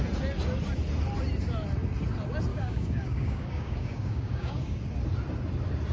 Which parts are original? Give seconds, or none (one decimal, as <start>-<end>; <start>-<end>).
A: 0.0-2.5; 4.8-5.9